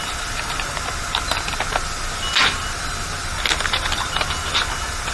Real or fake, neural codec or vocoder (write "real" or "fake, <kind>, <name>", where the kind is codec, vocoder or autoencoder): real